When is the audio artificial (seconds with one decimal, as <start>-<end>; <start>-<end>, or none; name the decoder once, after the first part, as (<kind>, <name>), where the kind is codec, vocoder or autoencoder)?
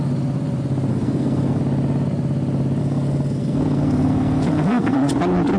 0.9-1.6 (codec, SNAC); 2.8-5.1